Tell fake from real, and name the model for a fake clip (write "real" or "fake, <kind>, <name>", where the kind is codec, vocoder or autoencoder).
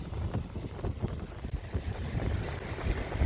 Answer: real